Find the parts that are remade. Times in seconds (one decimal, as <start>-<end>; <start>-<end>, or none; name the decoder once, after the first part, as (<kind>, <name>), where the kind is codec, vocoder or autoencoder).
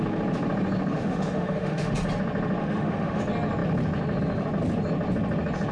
0.9-1.9 (autoencoder, DAC-VAE); 2.6-3.2